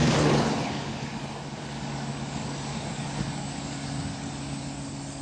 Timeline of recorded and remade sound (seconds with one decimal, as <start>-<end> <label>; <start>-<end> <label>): 0.0-5.2 remade